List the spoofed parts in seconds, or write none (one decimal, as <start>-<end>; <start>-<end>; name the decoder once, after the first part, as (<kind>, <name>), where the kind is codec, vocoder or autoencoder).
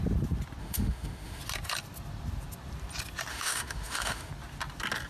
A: 0.6-1.4 (autoencoder, DAC-VAE); 3.3-4.3